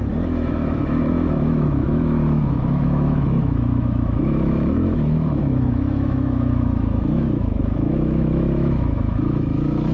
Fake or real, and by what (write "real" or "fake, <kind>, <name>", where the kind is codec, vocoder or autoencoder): fake, autoencoder, DAC-VAE